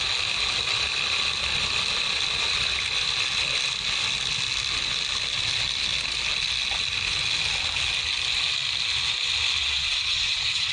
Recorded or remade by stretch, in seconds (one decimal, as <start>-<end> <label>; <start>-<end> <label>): 0.0-9.6 recorded; 9.6-10.7 remade